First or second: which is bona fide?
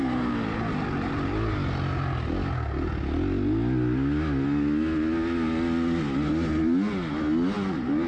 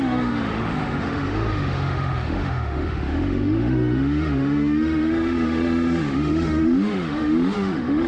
first